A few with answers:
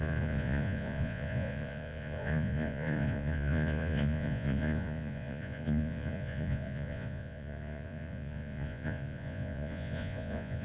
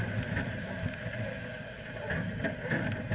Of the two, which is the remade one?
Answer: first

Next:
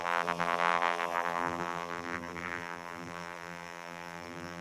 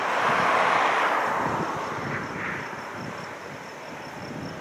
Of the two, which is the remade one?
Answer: first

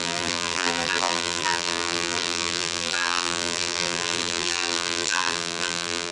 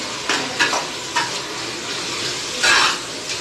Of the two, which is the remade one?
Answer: first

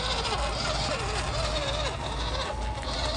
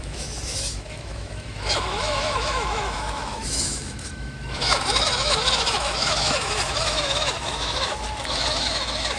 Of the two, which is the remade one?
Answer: second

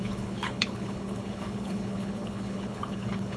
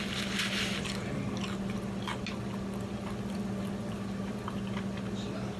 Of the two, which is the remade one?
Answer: first